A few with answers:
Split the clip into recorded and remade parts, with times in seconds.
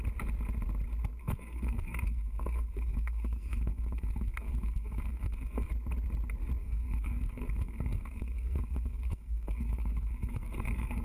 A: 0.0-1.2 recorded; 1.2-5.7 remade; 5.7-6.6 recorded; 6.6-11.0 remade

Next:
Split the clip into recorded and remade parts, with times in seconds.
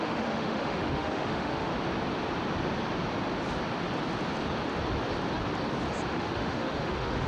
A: 0.0-1.7 remade; 1.7-6.1 recorded; 6.1-7.3 remade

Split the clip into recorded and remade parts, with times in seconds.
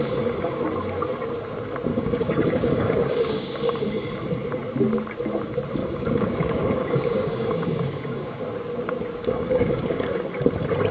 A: 0.0-1.9 recorded; 1.9-3.8 remade; 3.8-5.8 recorded; 5.8-8.4 remade; 8.4-9.2 recorded; 9.2-10.1 remade; 10.1-10.9 recorded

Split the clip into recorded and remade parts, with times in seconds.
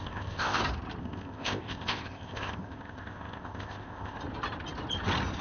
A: 0.0-0.6 remade; 0.6-1.0 recorded; 1.0-4.2 remade; 4.2-5.4 recorded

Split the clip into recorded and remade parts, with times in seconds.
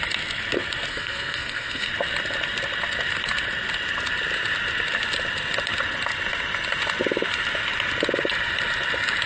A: 0.0-0.9 recorded; 0.9-1.9 remade; 1.9-9.3 recorded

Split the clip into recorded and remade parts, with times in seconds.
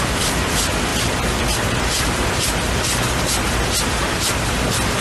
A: 0.0-0.9 remade; 0.9-1.6 recorded; 1.6-2.5 remade; 2.5-5.0 recorded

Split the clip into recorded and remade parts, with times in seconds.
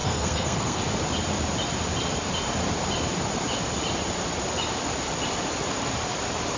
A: 0.0-0.8 remade; 0.8-6.6 recorded